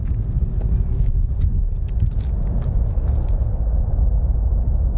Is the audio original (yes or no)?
yes